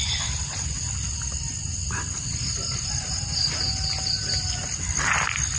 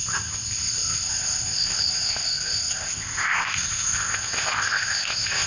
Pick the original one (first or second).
first